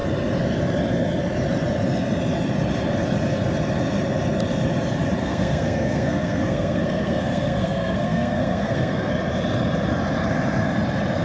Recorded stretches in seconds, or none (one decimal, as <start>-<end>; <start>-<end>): 0.0-5.2; 9.1-11.2